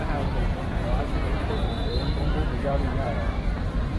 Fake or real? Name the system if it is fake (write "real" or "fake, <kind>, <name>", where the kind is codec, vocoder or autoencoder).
fake, vocoder, BigVGAN v2